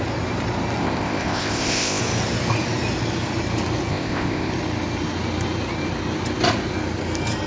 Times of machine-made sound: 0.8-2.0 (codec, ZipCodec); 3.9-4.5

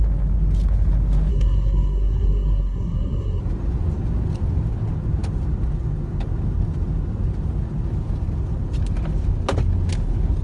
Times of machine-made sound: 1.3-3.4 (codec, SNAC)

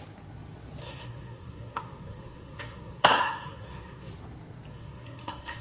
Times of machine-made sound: 0.8-4.1 (codec, SNAC); 4.7-5.6

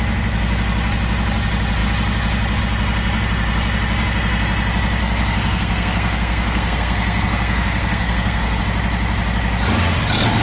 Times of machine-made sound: 5.0-8.6 (codec, SNAC)

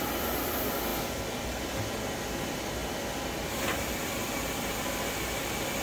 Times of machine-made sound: none

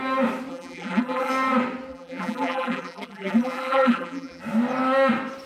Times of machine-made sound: 0.5-1.3 (vocoder, BigVGAN v2); 1.9-4.4